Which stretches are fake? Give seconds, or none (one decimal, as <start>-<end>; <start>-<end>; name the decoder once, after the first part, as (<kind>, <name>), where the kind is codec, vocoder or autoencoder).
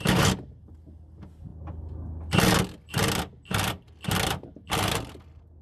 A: none